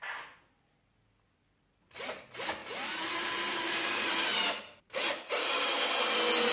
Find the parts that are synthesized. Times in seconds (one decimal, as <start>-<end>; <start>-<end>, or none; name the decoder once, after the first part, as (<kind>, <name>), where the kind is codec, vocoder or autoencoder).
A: 2.6-5.8 (vocoder, BigVGAN v2)